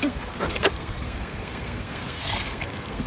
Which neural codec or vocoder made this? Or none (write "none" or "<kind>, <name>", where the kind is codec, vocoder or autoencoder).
codec, SNAC